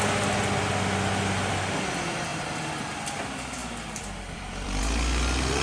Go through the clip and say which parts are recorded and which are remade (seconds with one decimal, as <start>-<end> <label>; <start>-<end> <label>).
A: 0.0-2.3 recorded; 2.3-3.2 remade; 3.2-3.6 recorded; 3.6-4.8 remade; 4.8-5.6 recorded